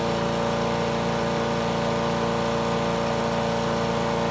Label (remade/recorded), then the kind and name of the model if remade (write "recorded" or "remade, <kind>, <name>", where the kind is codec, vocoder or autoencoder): recorded